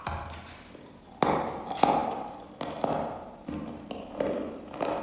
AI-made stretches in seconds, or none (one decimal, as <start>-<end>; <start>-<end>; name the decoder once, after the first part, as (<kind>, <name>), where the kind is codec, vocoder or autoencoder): none